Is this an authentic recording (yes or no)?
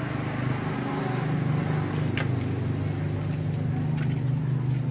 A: yes